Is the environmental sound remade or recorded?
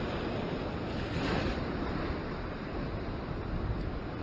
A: recorded